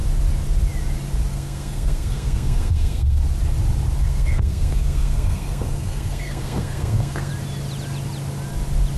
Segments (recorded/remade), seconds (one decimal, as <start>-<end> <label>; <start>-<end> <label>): 0.0-1.3 recorded; 1.3-3.2 remade; 3.2-4.0 recorded; 4.0-7.3 remade; 7.3-9.0 recorded